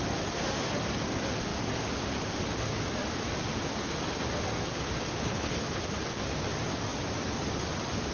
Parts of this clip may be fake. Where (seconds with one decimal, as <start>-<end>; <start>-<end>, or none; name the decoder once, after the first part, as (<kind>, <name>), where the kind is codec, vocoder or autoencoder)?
5.1-5.8 (codec, HILCodec)